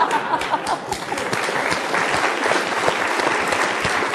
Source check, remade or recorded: recorded